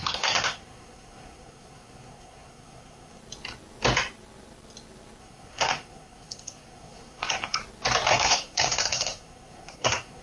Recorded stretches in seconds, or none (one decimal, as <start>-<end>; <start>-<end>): 3.2-5.2; 7.6-8.1